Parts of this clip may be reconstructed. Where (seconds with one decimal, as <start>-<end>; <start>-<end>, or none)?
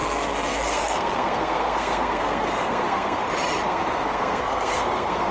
0.0-3.2; 3.7-5.3